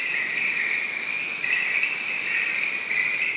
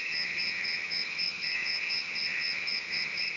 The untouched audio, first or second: first